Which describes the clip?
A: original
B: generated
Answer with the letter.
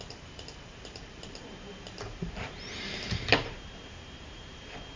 B